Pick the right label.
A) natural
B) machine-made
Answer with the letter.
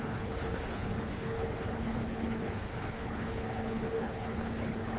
B